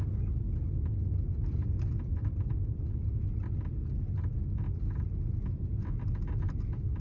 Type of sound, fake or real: real